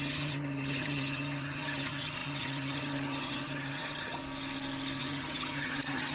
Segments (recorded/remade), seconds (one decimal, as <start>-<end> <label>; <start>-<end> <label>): 0.0-4.2 remade; 4.2-5.0 recorded; 5.0-6.1 remade